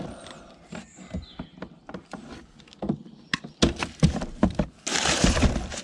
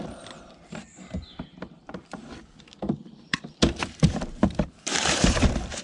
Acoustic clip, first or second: first